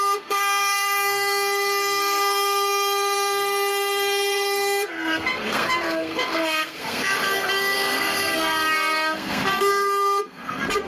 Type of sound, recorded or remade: remade